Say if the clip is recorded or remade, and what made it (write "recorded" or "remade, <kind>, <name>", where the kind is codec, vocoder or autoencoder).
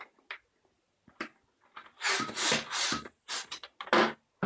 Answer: recorded